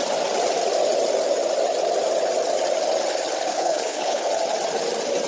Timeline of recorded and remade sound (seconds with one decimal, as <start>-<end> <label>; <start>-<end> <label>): 0.0-3.5 recorded; 3.5-4.3 remade; 4.3-5.3 recorded